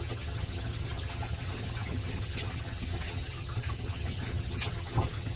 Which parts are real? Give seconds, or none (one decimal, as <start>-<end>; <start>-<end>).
none